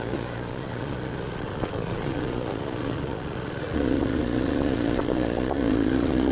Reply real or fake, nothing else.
fake